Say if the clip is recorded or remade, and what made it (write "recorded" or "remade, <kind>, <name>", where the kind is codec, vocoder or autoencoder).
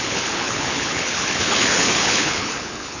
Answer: remade, codec, HILCodec